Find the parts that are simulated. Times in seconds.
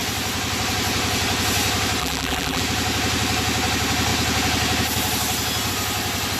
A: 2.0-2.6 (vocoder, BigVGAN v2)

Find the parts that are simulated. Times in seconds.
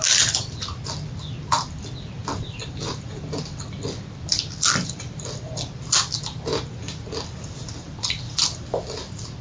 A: 0.0-6.5 (vocoder, BigVGAN v2); 7.6-9.4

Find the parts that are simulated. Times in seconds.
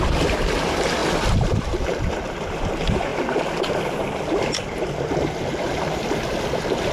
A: 0.0-3.1 (vocoder, BigVGAN v2); 5.4-6.9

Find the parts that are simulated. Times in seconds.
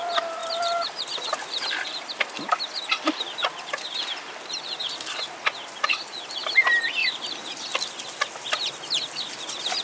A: 0.4-2.1 (vocoder, BigVGAN v2); 7.0-7.8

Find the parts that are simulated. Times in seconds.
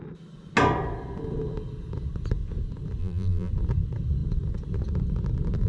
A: 3.0-3.5 (vocoder, BigVGAN v2)